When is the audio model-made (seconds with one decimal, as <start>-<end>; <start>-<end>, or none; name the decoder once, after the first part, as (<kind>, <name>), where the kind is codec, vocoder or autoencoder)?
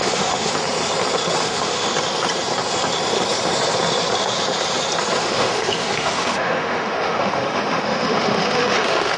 0.0-0.5 (autoencoder, DAC-VAE); 1.4-1.9; 5.2-9.2